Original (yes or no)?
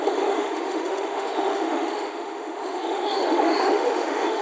no